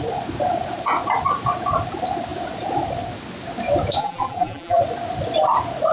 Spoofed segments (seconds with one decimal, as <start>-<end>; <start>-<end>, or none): 4.0-4.8